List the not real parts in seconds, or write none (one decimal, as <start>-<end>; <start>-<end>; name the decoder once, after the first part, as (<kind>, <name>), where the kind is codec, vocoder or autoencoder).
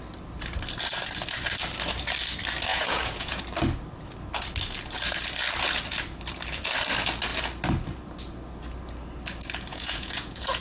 2.7-3.4 (vocoder, Vocos); 9.7-10.6